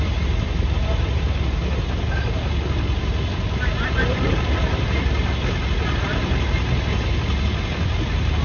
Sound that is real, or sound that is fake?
real